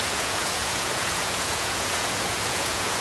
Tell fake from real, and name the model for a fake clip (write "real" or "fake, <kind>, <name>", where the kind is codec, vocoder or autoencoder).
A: fake, vocoder, Vocos